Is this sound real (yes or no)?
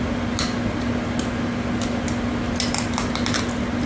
yes